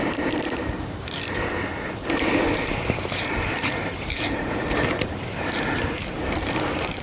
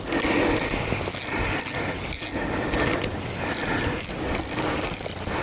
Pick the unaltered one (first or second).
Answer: second